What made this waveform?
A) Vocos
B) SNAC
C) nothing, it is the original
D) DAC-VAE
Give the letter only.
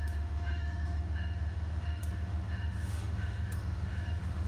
D